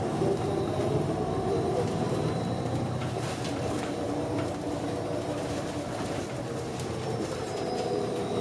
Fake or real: fake